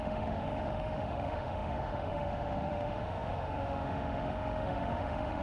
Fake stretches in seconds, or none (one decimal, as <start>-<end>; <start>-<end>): 0.0-5.4